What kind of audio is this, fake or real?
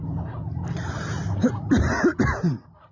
real